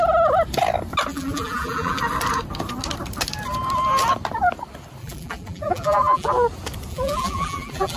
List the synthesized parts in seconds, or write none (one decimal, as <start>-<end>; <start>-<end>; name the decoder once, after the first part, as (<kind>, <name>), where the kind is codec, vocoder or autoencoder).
1.1-2.0 (vocoder, BigVGAN v2); 5.0-6.3; 6.9-8.0